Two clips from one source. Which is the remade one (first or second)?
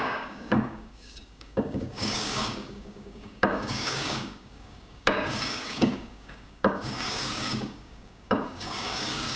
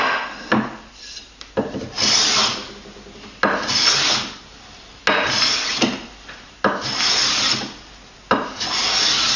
first